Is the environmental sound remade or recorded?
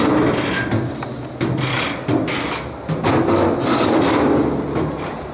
recorded